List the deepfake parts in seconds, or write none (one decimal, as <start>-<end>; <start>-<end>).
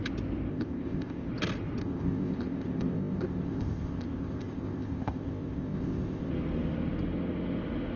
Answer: 0.5-1.3; 1.8-6.3